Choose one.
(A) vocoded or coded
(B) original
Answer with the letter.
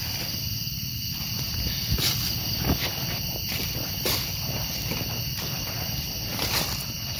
A